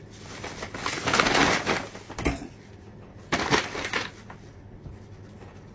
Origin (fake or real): real